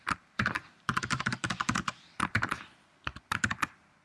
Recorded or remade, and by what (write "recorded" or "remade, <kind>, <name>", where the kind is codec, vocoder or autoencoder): remade, vocoder, BigVGAN v2